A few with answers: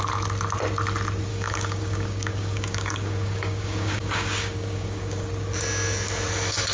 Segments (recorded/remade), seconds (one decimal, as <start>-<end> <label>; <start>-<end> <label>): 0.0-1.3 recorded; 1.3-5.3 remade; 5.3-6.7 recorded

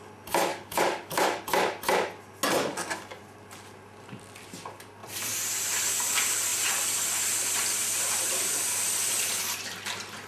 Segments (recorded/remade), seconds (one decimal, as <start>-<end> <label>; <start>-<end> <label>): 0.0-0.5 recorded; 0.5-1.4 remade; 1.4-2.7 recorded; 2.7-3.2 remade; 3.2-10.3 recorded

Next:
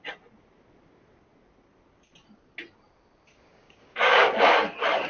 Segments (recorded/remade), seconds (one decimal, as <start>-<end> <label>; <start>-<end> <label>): 0.0-3.5 recorded; 3.5-4.5 remade; 4.5-5.1 recorded

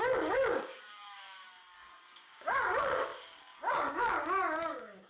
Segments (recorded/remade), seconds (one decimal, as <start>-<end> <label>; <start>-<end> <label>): 0.0-5.1 remade

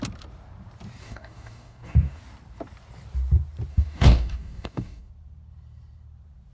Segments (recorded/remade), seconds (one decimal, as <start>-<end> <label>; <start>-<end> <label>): 0.0-1.0 recorded; 1.0-2.2 remade; 2.2-3.7 recorded; 3.7-5.1 remade; 5.1-6.5 recorded

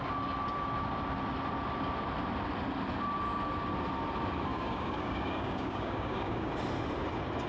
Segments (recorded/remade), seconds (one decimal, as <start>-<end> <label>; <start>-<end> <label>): 0.0-4.5 recorded; 4.5-6.5 remade; 6.5-7.5 recorded

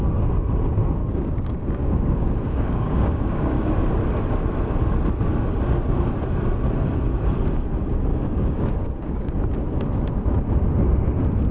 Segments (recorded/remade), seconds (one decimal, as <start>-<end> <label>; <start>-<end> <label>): 0.0-1.0 recorded; 1.0-3.7 remade; 3.7-8.1 recorded; 8.1-9.3 remade; 9.3-11.5 recorded

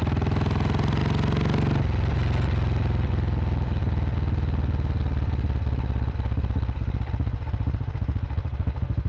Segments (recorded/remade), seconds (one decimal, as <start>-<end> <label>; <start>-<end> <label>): 0.0-9.1 recorded